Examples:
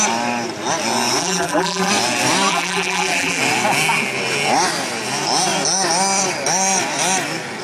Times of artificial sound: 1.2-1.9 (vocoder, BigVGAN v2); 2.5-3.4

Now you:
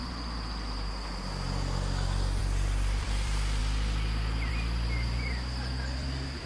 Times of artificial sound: 2.4-3.6 (vocoder, BigVGAN v2); 4.5-6.5